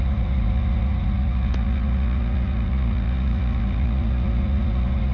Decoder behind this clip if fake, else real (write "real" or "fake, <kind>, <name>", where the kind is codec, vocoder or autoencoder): fake, vocoder, Vocos